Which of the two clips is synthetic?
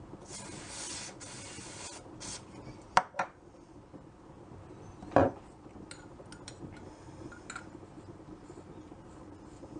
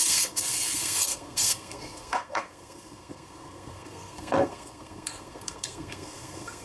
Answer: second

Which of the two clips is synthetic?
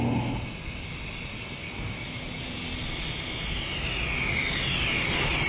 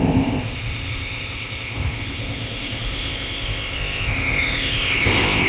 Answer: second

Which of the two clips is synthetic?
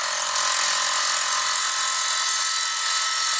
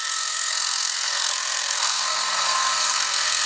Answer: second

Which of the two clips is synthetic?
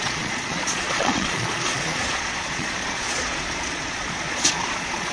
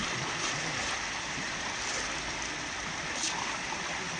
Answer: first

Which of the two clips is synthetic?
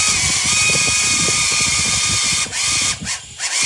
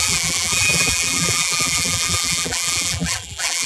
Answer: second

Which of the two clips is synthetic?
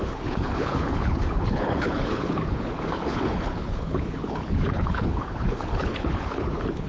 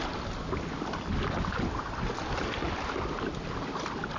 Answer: first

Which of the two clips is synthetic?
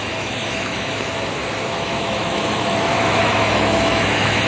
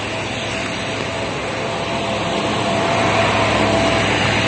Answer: first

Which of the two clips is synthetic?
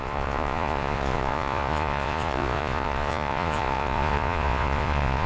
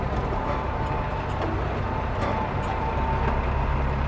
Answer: first